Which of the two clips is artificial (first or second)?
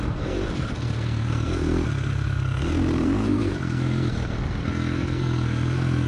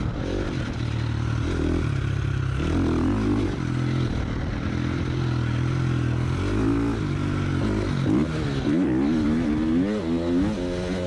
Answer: first